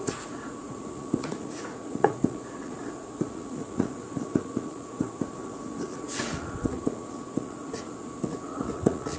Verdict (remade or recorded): remade